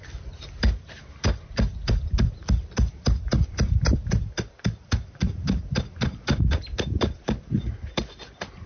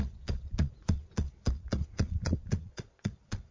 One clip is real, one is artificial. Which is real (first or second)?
first